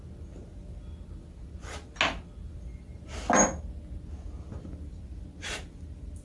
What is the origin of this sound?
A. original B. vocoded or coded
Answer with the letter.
A